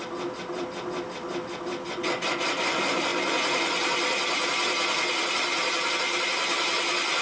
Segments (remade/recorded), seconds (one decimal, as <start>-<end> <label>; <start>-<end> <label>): 0.0-7.2 recorded